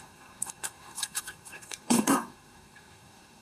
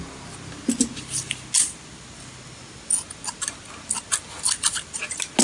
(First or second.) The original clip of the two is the second